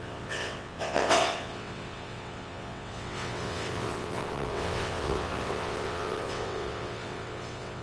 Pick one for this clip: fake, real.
fake